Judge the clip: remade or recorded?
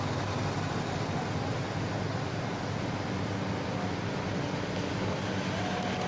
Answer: recorded